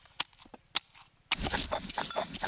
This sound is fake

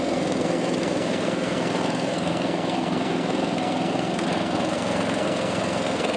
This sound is fake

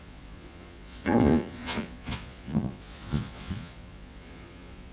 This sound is fake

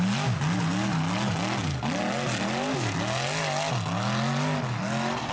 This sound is real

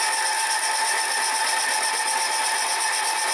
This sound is real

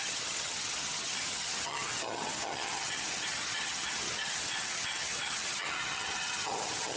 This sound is fake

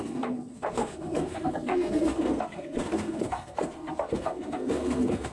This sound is fake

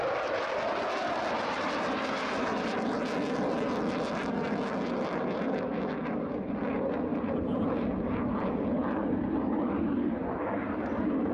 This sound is real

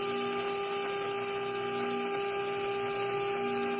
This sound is real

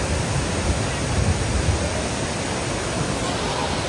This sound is real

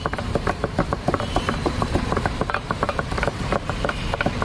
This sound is fake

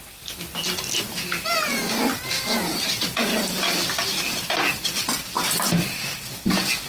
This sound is real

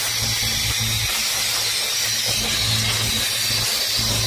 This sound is real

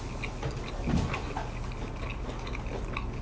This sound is real